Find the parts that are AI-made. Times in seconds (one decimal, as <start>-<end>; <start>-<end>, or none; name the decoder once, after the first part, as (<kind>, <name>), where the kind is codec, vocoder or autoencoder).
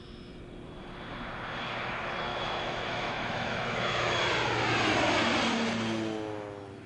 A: 2.3-4.2 (autoencoder, DAC-VAE)